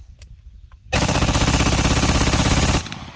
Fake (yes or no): no